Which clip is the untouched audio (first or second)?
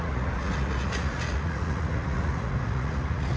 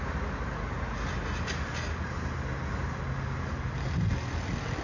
second